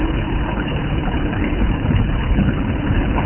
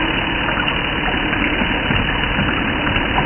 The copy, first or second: first